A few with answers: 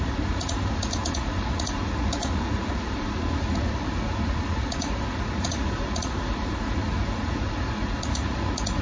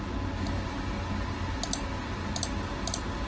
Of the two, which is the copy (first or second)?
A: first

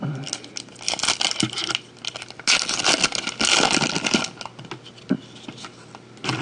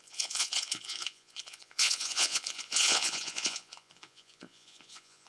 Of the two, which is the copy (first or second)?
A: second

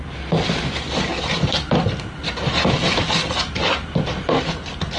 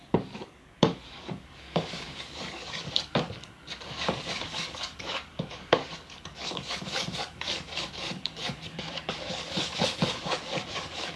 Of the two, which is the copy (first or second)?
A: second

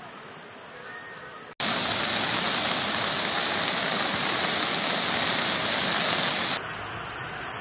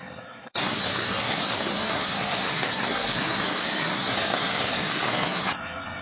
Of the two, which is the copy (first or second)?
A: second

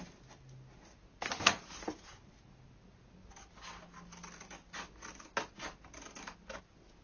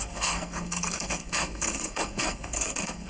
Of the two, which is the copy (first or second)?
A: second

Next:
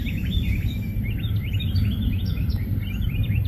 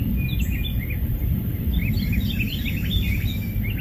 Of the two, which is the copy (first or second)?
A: first